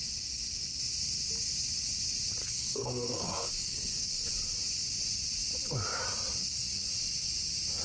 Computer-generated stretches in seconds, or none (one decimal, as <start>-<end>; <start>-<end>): 2.4-4.2; 6.4-6.9

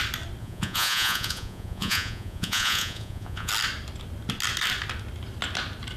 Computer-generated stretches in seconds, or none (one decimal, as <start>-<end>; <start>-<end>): 0.4-3.5

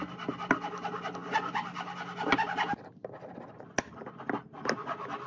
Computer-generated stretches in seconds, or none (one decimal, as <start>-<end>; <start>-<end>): none

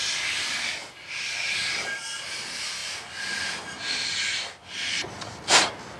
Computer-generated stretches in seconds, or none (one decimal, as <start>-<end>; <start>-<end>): none

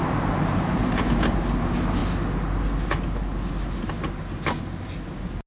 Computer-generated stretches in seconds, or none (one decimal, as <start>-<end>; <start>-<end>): none

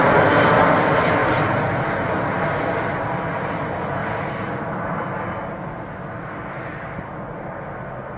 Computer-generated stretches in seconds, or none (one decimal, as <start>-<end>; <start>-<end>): 1.2-1.8

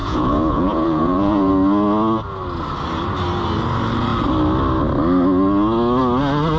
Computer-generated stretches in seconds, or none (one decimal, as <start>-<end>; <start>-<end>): 0.0-1.5